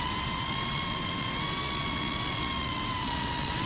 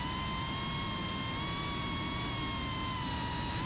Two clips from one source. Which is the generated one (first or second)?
first